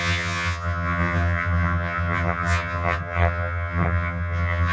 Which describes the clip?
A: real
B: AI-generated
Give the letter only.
B